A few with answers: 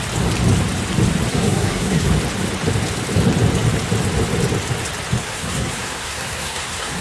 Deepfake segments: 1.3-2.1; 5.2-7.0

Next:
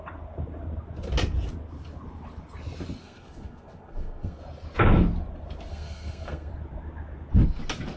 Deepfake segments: 3.0-4.4; 5.7-6.5